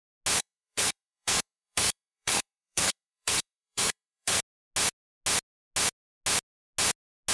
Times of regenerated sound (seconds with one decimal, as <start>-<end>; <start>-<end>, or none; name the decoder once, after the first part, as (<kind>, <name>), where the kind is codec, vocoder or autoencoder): 0.4-4.4 (codec, SNAC)